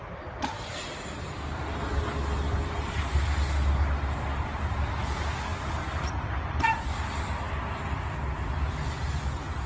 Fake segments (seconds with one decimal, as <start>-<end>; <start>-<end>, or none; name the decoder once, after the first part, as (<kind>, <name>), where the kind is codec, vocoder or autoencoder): none